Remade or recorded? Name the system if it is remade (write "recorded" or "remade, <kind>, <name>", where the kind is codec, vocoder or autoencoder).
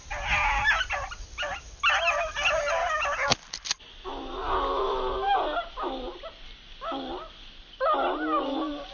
recorded